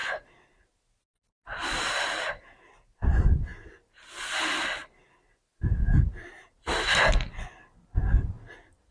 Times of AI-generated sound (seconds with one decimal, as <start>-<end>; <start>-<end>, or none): none